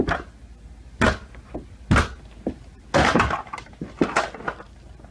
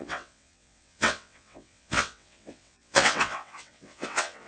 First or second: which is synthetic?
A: second